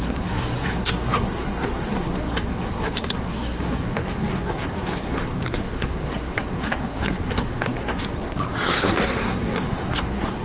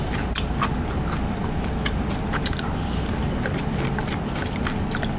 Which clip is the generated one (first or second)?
first